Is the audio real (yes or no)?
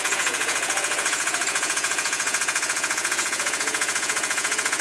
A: no